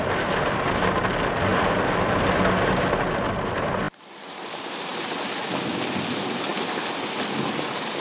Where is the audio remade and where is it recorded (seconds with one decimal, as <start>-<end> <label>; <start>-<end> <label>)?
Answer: 0.0-8.0 recorded